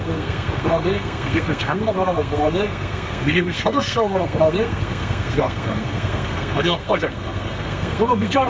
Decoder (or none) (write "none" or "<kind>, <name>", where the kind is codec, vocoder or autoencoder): codec, SNAC